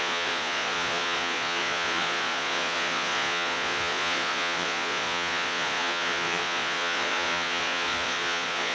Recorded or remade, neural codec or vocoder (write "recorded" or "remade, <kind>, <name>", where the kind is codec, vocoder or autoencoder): remade, vocoder, Vocos